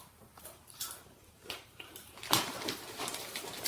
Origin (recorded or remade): remade